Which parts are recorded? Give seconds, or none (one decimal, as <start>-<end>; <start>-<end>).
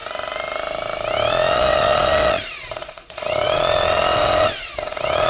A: 0.0-1.3